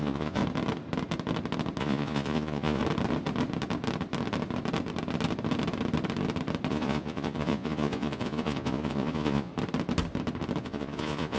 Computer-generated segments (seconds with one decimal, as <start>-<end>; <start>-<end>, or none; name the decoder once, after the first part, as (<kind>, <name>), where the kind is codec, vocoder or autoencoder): 0.0-0.4 (vocoder, Vocos); 1.8-2.8; 6.7-9.5; 10.6-11.4